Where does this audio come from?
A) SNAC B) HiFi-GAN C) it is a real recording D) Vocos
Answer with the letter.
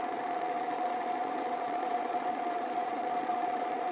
D